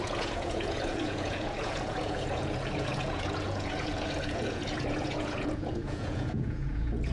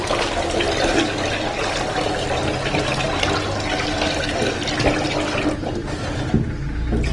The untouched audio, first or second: second